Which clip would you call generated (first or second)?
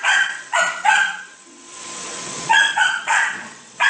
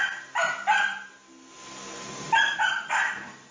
first